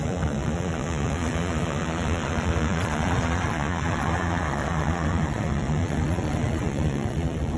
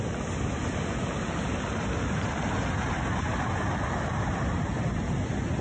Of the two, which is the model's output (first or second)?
first